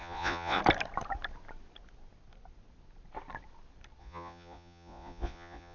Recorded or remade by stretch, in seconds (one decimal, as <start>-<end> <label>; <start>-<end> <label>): 0.0-0.6 remade; 0.6-4.0 recorded; 4.0-5.7 remade